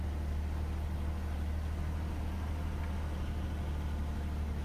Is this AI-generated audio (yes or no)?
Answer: no